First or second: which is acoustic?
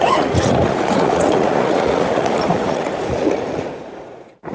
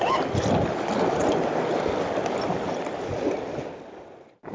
second